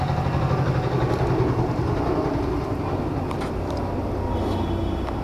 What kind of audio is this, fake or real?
real